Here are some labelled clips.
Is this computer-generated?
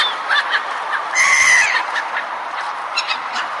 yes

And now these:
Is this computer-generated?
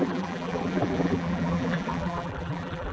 yes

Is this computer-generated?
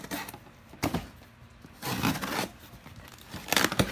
no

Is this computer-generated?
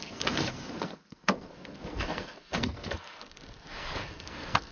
yes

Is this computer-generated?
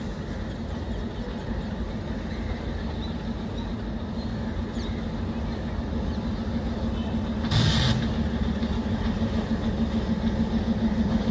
no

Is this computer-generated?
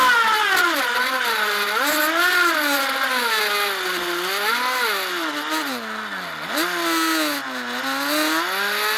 no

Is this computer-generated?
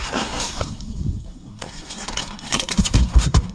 yes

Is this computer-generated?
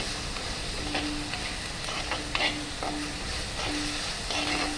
no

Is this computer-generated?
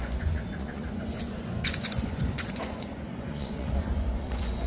yes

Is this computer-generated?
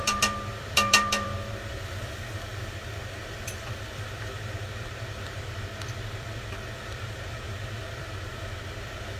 yes